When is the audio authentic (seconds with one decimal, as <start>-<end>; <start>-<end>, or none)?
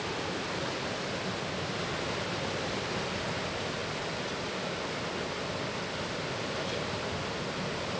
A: 0.0-8.0